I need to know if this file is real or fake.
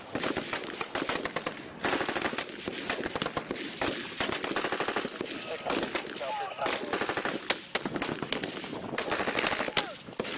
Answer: real